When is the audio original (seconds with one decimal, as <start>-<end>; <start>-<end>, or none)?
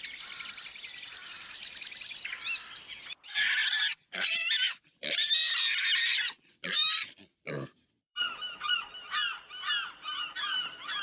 4.4-5.0